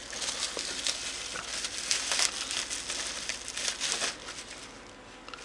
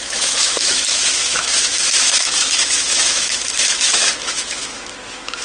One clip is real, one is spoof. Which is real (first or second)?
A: first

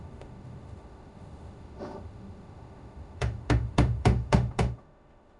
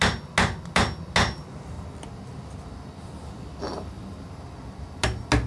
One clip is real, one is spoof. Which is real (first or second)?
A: second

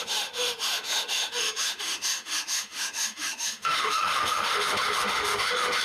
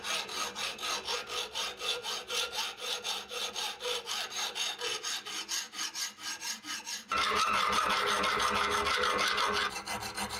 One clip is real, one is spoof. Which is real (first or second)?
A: second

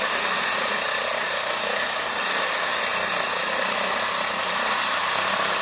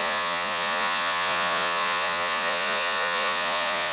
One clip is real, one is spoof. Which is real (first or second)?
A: first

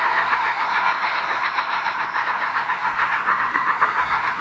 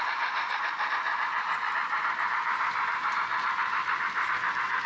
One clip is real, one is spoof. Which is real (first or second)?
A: second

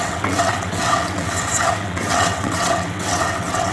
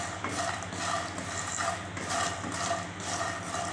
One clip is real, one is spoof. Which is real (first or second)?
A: second